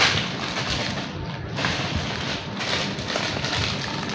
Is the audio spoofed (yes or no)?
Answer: no